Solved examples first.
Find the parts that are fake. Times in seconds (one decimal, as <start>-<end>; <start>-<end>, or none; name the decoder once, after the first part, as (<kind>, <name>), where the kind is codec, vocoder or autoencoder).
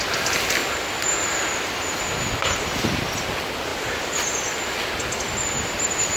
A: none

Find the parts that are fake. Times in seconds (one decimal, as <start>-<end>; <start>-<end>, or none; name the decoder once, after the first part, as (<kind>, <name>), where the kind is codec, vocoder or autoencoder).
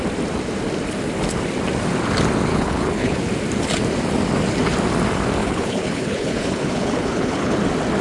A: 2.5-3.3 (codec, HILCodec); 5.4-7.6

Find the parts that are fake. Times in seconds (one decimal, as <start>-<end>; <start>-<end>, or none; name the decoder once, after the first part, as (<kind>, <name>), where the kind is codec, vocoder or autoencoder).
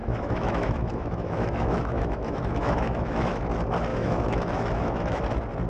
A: 0.0-3.4 (autoencoder, DAC-VAE); 3.9-5.2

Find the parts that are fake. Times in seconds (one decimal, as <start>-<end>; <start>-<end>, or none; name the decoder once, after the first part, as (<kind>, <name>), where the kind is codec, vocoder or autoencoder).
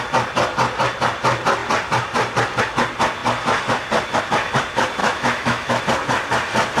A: 5.0-5.8 (autoencoder, DAC-VAE)